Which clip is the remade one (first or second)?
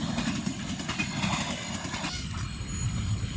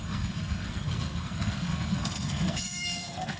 second